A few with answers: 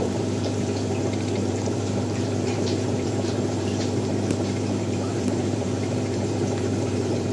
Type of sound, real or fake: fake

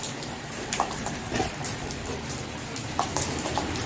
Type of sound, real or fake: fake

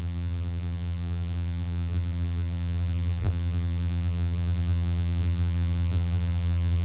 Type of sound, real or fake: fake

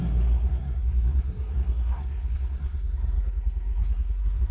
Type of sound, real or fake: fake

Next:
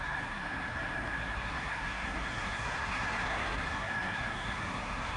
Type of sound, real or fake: fake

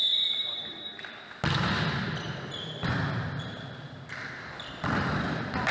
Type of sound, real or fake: real